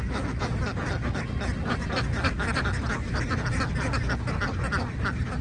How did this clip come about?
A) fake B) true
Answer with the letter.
B